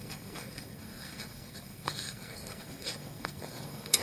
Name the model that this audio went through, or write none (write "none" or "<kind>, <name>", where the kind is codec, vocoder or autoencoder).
codec, SNAC